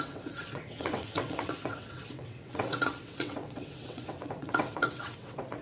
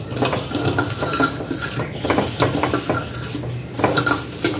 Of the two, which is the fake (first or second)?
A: first